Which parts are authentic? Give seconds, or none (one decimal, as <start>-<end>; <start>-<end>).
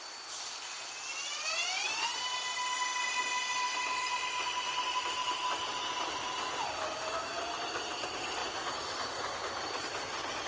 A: none